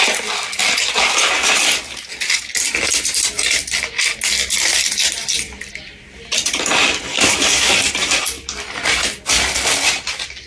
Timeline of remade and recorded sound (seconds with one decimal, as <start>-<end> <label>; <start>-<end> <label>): 0.0-7.1 recorded; 7.1-7.7 remade; 7.7-10.5 recorded